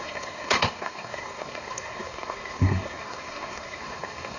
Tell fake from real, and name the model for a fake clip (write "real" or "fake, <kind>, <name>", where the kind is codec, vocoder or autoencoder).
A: fake, codec, SNAC